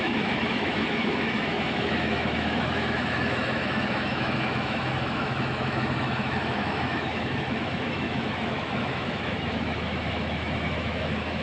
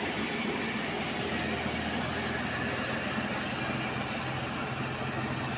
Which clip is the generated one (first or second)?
first